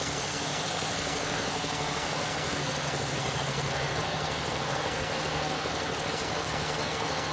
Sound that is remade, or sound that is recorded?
remade